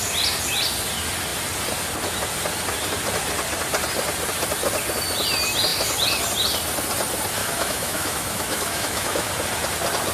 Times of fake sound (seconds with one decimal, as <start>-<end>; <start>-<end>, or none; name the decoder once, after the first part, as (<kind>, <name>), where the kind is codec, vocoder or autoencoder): 7.4-9.3 (autoencoder, DAC-VAE)